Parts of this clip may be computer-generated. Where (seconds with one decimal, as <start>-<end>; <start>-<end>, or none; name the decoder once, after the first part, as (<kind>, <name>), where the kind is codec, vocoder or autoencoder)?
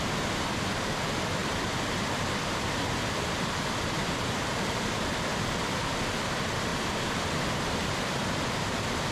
1.4-6.3 (vocoder, BigVGAN v2); 6.7-8.3